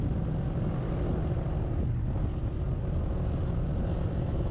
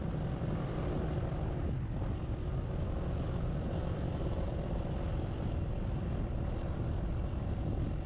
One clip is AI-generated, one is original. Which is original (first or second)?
first